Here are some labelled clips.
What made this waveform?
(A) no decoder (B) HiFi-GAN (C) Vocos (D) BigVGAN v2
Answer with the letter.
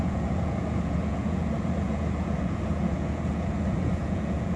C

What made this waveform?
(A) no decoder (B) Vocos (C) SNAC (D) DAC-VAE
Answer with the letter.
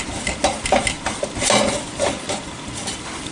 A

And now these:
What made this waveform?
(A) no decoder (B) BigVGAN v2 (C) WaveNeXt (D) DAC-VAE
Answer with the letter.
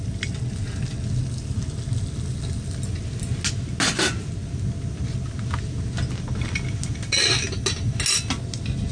A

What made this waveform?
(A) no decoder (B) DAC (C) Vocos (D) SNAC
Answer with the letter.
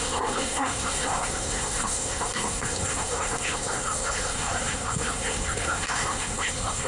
D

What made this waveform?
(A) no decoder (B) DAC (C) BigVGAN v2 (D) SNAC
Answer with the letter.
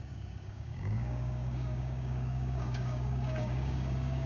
B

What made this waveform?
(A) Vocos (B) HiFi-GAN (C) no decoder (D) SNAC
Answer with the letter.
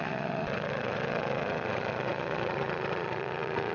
A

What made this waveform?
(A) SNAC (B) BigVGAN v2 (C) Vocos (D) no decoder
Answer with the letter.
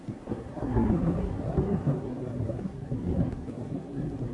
A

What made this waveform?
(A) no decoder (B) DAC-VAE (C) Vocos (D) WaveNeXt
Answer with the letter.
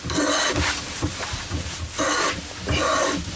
A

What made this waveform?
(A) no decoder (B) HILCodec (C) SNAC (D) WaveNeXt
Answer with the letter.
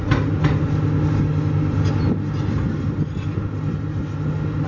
A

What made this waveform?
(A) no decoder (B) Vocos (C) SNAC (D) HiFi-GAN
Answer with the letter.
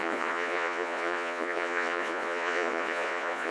B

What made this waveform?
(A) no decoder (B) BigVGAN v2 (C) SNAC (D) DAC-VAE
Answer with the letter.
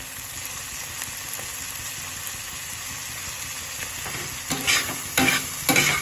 A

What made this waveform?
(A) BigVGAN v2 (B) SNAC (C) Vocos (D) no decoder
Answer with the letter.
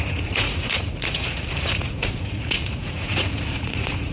C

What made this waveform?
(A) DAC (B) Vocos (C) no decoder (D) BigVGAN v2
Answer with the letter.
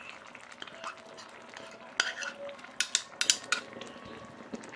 C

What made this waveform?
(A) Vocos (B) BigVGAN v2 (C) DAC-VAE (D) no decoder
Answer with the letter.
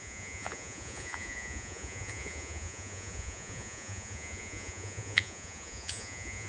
A